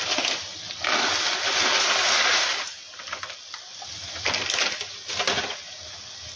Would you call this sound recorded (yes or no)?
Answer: yes